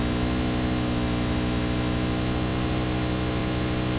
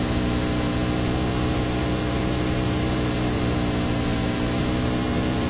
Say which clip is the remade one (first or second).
second